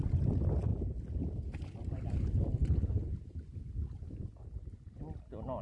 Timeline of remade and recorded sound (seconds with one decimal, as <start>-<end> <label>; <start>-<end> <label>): 0.0-5.6 recorded